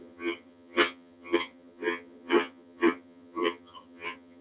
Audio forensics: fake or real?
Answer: fake